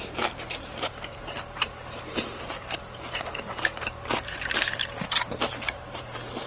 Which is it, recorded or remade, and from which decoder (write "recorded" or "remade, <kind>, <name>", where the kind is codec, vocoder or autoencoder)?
remade, vocoder, BigVGAN v2